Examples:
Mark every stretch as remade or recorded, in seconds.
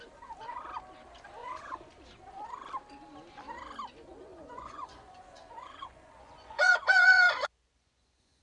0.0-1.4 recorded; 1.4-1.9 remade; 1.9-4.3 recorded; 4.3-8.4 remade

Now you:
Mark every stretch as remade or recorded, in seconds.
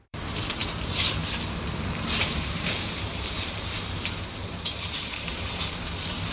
0.0-6.3 remade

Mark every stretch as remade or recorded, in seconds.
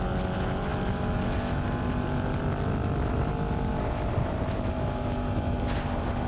0.0-6.3 recorded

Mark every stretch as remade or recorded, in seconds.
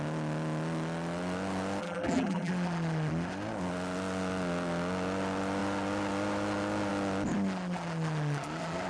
0.0-1.8 recorded; 1.8-2.5 remade; 2.5-8.9 recorded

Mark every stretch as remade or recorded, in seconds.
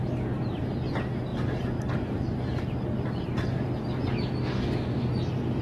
0.0-4.4 recorded; 4.4-5.1 remade; 5.1-5.6 recorded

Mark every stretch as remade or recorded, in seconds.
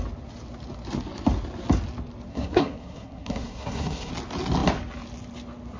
0.0-2.3 recorded; 2.3-4.1 remade; 4.1-5.8 recorded